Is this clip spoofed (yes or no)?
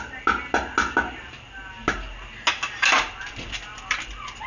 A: no